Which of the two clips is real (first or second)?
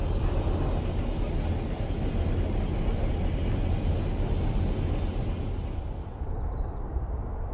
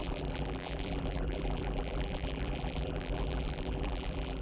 first